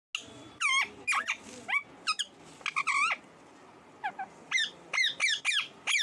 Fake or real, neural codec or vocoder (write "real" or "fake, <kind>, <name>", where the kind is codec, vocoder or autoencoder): real